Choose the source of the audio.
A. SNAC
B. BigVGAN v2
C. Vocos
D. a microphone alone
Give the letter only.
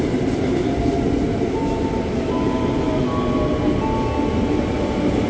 D